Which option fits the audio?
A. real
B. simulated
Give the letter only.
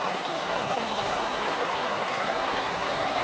B